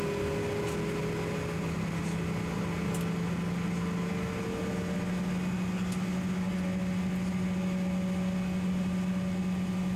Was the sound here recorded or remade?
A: recorded